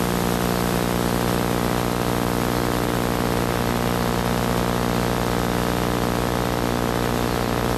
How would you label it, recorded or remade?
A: recorded